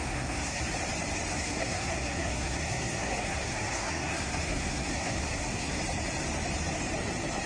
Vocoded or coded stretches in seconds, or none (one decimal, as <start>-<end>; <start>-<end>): 0.0-0.6; 1.3-5.8